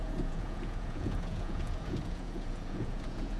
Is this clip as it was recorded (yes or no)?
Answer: no